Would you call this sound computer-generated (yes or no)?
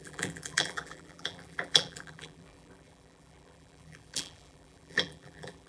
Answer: yes